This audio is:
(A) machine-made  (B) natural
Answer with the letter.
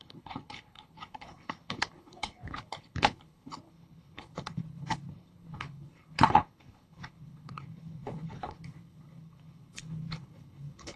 A